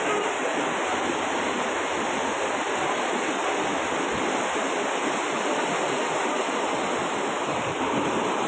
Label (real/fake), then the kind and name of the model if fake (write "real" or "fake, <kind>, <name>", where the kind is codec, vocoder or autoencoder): real